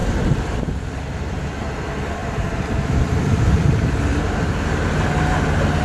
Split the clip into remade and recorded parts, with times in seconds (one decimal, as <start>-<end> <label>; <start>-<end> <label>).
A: 0.0-0.7 remade; 0.7-4.1 recorded; 4.1-4.9 remade; 4.9-5.8 recorded